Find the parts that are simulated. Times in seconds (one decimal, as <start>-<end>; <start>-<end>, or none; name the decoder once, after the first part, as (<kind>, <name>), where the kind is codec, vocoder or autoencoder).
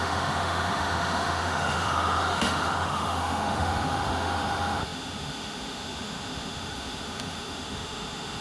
0.0-8.4 (autoencoder, DAC-VAE)